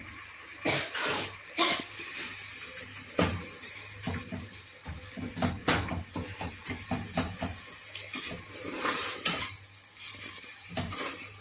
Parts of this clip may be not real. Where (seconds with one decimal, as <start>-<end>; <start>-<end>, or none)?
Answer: 0.0-4.8; 8.5-11.4